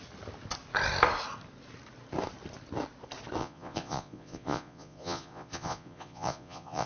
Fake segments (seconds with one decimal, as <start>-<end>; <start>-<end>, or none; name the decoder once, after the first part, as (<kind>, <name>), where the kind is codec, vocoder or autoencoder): 3.4-6.9 (vocoder, Vocos)